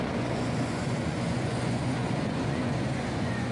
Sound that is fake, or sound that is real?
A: fake